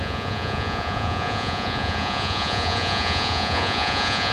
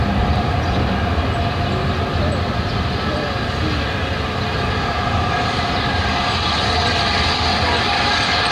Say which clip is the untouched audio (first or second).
second